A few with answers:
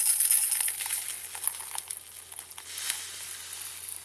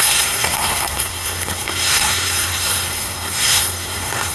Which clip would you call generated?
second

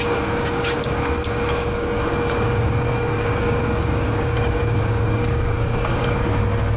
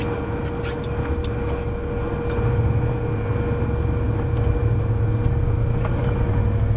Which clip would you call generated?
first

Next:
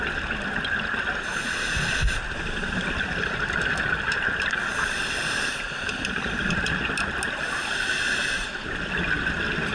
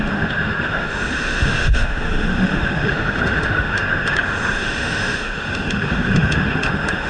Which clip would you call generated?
second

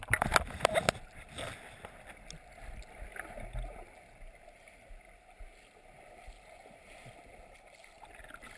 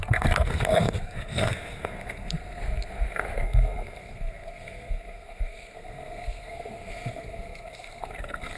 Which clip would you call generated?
second